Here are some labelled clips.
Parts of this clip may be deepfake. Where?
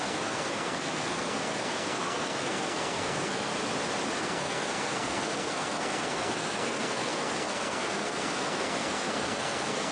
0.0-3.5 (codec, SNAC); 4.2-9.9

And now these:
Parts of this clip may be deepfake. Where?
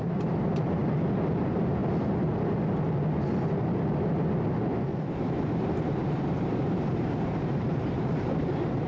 0.0-0.8 (vocoder, BigVGAN v2); 1.4-1.8; 5.2-8.9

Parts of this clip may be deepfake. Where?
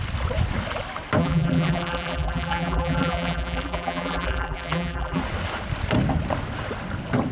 1.2-5.2 (vocoder, BigVGAN v2)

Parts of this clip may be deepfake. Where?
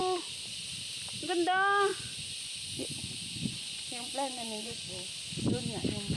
1.9-4.9 (vocoder, Vocos)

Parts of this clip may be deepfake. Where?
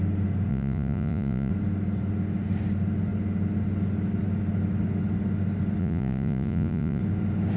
0.5-1.5 (vocoder, Vocos); 5.8-7.0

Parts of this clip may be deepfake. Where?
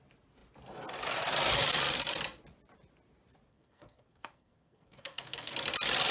3.5-5.5 (codec, SNAC)